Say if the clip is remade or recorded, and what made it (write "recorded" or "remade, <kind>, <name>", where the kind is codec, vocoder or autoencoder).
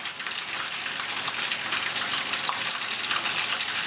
recorded